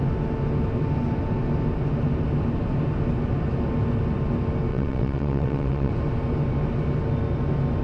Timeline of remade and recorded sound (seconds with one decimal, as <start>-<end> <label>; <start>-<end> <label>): 0.0-4.7 recorded; 4.7-5.9 remade; 5.9-7.8 recorded